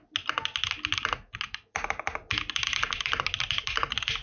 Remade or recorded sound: recorded